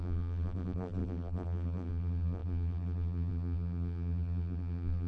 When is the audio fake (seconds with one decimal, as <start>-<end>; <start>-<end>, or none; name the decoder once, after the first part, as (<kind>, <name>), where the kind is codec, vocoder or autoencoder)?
0.0-5.1 (vocoder, BigVGAN v2)